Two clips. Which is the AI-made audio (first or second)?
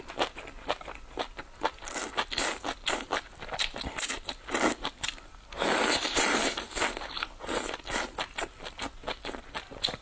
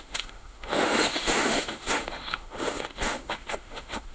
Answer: second